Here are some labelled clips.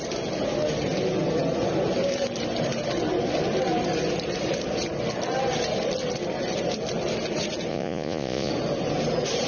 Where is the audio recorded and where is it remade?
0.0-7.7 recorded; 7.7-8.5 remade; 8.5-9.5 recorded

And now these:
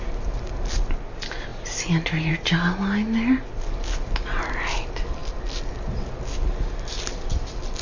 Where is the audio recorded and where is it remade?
0.0-7.8 recorded